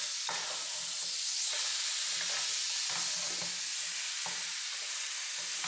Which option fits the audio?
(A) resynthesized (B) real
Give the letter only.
B